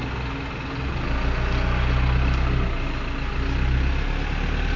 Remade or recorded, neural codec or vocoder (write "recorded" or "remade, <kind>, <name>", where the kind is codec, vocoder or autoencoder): recorded